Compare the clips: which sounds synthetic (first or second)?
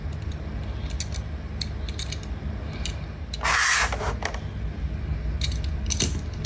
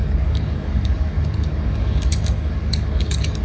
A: second